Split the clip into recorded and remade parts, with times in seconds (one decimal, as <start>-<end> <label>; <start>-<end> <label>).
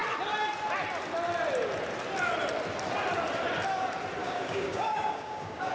0.0-4.2 recorded; 4.2-5.7 remade